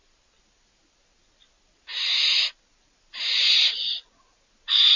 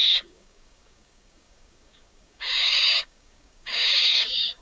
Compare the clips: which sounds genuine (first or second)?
first